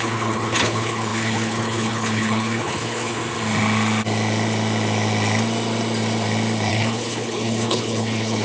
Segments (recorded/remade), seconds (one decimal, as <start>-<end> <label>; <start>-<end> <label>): 0.0-3.2 remade; 3.2-6.7 recorded; 6.7-8.4 remade